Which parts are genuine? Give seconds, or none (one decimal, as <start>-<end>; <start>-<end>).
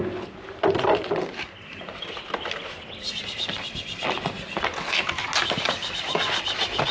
0.0-6.9